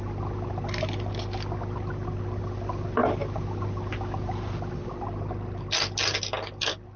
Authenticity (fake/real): real